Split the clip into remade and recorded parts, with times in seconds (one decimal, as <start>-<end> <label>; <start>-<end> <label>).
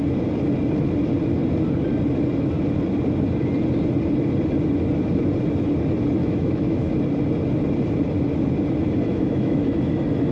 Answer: 0.0-6.2 recorded; 6.2-6.9 remade; 6.9-9.1 recorded; 9.1-9.7 remade; 9.7-10.3 recorded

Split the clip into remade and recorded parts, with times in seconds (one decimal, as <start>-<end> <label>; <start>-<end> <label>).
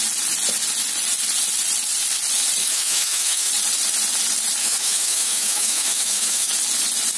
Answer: 0.0-2.6 recorded; 2.6-3.5 remade; 3.5-4.6 recorded; 4.6-6.5 remade; 6.5-7.2 recorded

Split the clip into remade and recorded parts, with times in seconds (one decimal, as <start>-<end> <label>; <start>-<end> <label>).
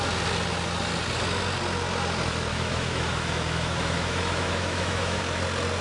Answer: 0.0-2.5 recorded; 2.5-5.2 remade; 5.2-5.8 recorded